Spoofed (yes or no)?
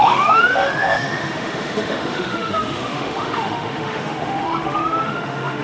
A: yes